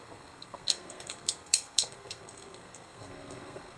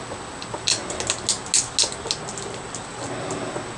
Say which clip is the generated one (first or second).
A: first